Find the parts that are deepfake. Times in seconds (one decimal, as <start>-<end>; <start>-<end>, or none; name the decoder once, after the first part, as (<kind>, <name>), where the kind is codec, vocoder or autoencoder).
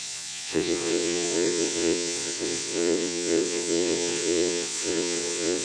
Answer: 0.0-5.6 (vocoder, Vocos)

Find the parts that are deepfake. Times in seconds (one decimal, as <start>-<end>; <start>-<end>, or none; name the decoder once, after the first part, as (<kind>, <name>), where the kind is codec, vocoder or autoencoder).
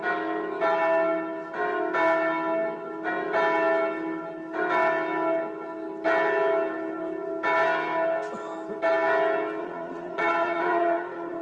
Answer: 9.6-11.4 (vocoder, Vocos)